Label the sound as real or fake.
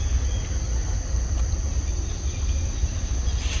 real